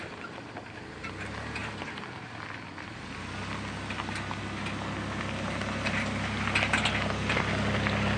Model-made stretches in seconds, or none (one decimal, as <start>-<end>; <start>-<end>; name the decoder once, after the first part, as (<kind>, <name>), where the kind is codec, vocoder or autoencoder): none